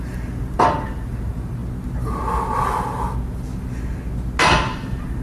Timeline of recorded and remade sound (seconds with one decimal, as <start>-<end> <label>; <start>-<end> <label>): 0.0-1.6 remade; 1.6-4.7 recorded; 4.7-5.2 remade